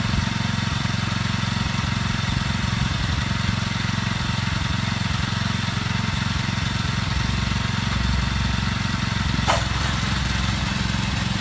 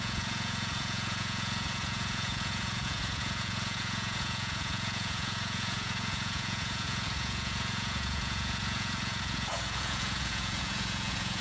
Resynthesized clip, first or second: second